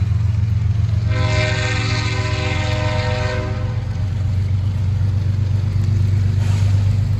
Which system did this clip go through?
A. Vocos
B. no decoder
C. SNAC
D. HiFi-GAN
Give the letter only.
B